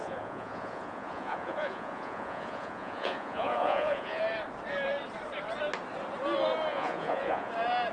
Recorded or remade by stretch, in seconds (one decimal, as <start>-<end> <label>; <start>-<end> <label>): 0.0-4.2 remade; 4.2-6.7 recorded; 6.7-7.5 remade; 7.5-7.9 recorded